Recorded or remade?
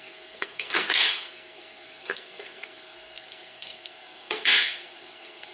remade